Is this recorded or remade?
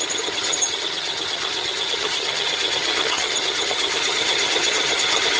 remade